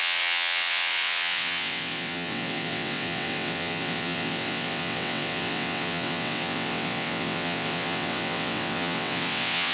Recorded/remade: remade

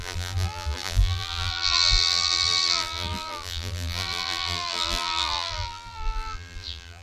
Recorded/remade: remade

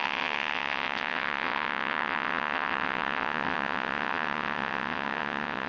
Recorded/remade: remade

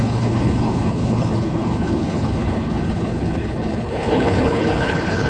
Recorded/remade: remade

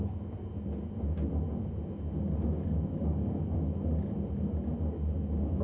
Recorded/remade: recorded